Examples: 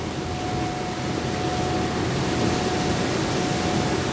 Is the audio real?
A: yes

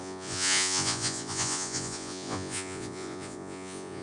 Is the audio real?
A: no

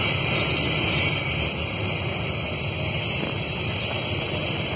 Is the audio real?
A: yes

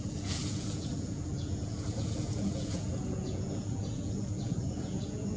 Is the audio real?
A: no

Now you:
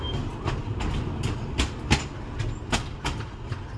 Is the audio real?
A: yes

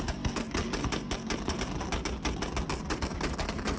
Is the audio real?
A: yes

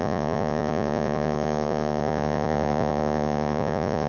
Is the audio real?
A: no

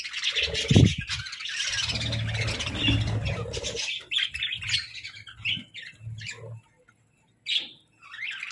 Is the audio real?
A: yes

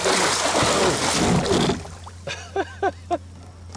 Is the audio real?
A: yes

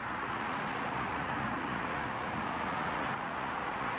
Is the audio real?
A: no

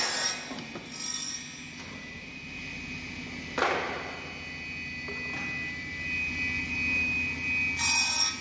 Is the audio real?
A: yes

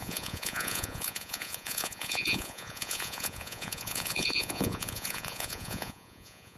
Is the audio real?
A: no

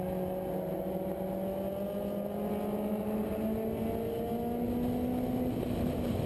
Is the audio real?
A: yes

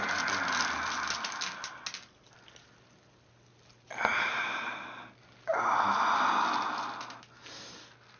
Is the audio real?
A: yes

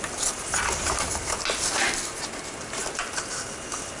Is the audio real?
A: yes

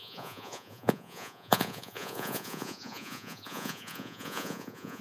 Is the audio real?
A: no